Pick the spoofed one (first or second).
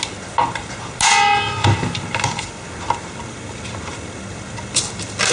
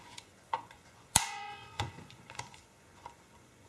second